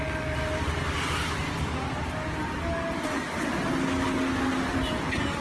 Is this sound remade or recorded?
recorded